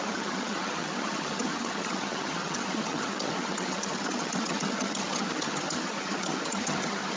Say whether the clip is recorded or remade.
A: remade